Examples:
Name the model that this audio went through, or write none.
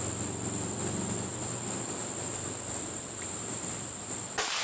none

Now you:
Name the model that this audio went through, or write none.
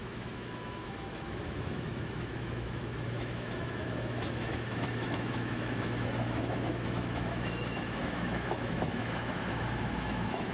autoencoder, DAC-VAE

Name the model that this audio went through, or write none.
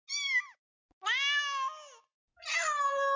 none